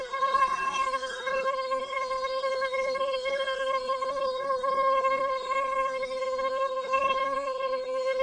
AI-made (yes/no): yes